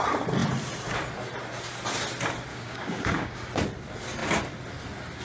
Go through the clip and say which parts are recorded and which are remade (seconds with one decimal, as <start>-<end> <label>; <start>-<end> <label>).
0.0-2.5 recorded; 2.5-3.6 remade; 3.6-5.2 recorded